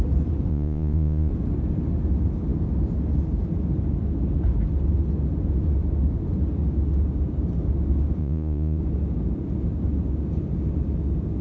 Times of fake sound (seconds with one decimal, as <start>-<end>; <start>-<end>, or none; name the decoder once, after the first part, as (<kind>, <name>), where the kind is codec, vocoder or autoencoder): 0.5-1.3 (vocoder, Vocos); 8.2-8.8